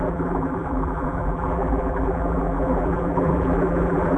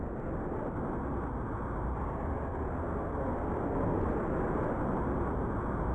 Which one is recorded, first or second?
second